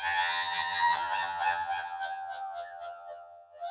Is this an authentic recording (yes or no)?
no